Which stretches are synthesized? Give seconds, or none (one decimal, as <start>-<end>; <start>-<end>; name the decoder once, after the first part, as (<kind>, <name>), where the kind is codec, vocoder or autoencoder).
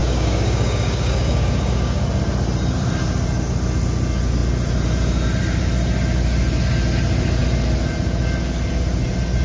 0.0-2.0 (codec, DAC)